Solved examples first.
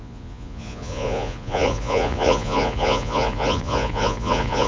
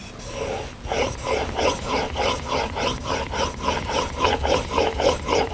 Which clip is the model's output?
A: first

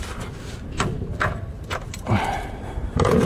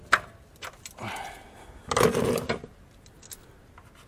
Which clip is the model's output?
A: first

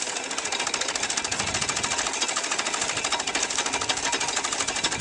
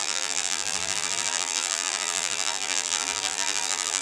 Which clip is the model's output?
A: second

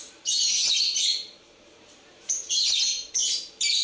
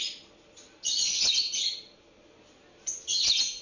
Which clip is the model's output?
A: first